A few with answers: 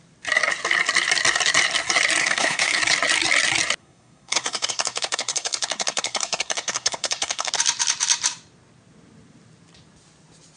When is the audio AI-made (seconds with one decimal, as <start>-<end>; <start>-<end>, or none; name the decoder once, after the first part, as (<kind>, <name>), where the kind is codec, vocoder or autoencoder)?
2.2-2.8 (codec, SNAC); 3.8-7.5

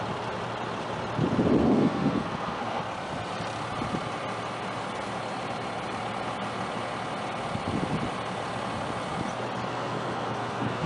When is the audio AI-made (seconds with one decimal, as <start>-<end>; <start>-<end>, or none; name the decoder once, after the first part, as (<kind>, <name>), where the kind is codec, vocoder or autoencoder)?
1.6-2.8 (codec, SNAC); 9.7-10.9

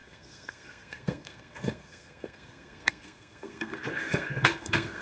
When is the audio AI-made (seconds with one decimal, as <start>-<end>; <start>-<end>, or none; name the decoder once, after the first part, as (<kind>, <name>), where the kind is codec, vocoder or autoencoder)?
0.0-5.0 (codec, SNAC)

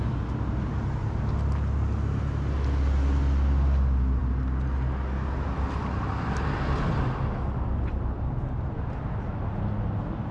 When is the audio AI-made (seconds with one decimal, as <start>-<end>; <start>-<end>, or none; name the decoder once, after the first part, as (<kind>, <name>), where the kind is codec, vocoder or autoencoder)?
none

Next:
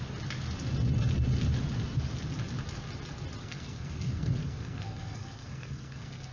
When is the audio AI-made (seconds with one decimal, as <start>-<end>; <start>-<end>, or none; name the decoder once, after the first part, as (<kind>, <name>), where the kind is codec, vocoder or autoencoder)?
3.4-6.3 (codec, SNAC)

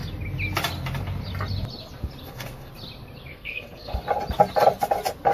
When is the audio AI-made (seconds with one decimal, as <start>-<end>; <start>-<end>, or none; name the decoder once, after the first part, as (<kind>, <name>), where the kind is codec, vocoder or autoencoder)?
2.2-2.7 (codec, SNAC); 3.3-4.0

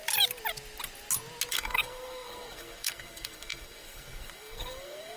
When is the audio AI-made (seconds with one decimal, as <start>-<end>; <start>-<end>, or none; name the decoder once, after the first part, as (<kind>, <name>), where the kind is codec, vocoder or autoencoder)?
1.5-5.2 (codec, SNAC)

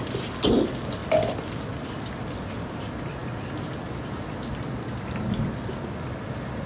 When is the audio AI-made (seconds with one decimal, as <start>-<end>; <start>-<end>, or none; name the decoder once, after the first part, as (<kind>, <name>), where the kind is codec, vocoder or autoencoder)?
none